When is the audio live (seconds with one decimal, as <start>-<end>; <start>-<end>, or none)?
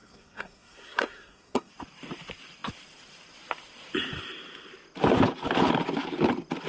1.7-6.7